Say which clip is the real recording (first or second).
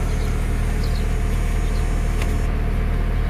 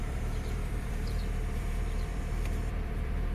first